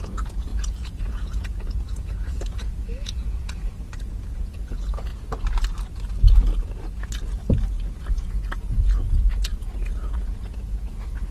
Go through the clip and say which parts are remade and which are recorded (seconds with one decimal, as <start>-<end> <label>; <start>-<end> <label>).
0.0-5.1 remade; 5.1-8.1 recorded; 8.1-11.3 remade